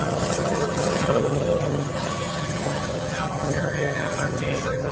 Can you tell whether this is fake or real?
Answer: fake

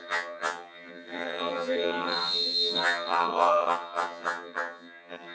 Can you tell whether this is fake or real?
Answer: fake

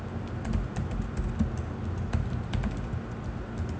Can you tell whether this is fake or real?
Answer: real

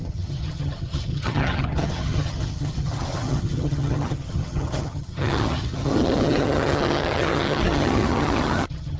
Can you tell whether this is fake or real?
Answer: fake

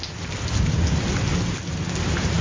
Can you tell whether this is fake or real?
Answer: real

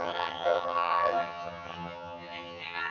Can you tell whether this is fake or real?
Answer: fake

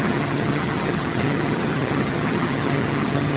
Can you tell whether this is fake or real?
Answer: fake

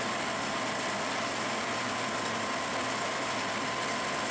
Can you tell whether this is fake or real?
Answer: real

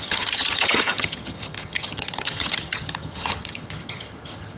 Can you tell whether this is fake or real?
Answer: fake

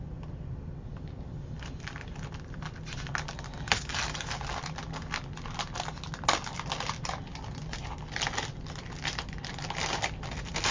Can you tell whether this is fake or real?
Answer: real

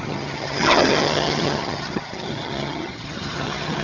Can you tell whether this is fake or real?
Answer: fake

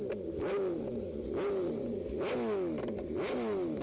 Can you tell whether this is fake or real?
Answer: real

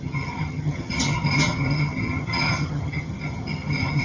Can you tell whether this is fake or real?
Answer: fake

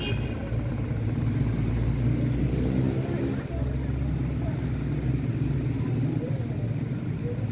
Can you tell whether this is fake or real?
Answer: real